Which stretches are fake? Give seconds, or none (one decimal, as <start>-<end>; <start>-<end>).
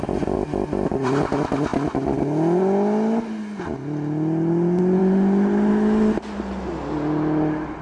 5.0-5.7